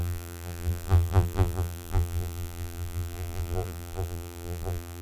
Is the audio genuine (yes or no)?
no